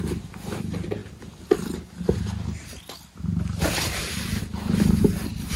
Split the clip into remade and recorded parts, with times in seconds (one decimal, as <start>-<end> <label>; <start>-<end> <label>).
0.0-5.6 recorded